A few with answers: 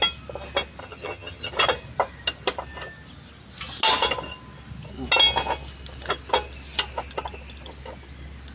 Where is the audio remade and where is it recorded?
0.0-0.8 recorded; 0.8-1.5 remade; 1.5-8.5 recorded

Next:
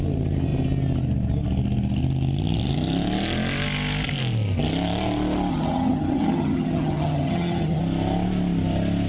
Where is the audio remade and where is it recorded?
0.0-5.5 recorded; 5.5-7.8 remade; 7.8-9.1 recorded

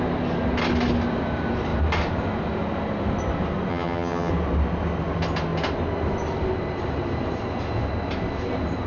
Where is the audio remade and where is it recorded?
0.0-3.7 recorded; 3.7-4.3 remade; 4.3-8.9 recorded

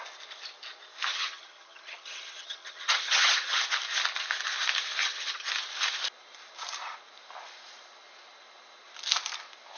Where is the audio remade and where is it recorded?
0.0-1.1 recorded; 1.1-3.6 remade; 3.6-5.0 recorded; 5.0-5.5 remade; 5.5-9.8 recorded

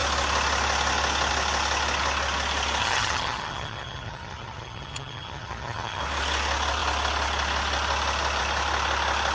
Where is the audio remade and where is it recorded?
0.0-2.8 recorded; 2.8-6.0 remade; 6.0-9.3 recorded